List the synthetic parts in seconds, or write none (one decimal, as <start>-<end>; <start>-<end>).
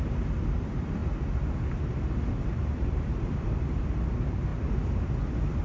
0.0-1.0; 2.4-4.5